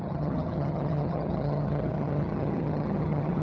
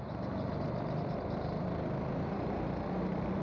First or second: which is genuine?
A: second